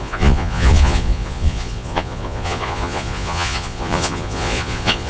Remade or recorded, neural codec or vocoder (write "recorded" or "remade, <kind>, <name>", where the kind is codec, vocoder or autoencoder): remade, vocoder, Vocos